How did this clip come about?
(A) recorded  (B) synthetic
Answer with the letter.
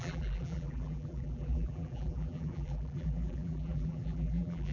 B